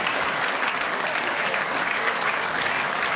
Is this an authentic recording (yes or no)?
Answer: no